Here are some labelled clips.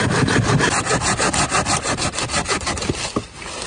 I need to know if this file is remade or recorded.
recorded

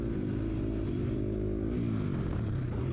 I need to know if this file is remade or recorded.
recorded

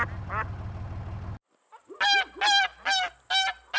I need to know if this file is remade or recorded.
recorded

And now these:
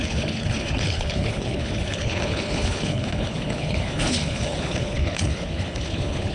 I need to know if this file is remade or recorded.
remade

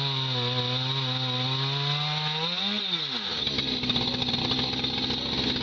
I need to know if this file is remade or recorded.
recorded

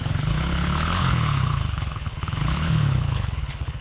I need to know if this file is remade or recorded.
remade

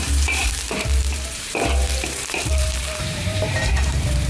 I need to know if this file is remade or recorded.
remade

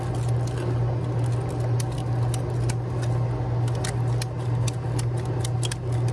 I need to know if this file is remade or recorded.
recorded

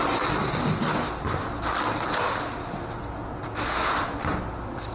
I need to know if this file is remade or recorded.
recorded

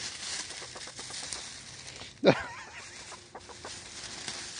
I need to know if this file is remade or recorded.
recorded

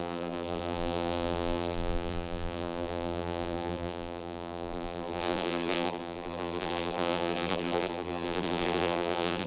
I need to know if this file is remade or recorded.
remade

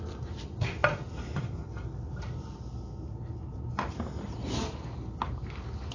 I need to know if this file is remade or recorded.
recorded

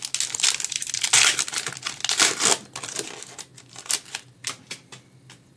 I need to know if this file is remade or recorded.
recorded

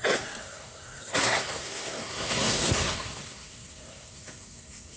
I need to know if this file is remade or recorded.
remade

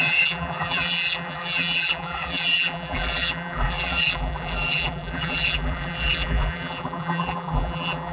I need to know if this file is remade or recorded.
remade